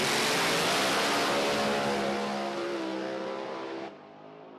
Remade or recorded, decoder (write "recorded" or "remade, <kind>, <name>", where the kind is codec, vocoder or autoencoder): recorded